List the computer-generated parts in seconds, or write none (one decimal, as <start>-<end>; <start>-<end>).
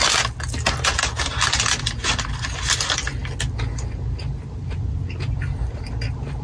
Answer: none